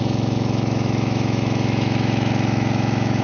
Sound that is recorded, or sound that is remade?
remade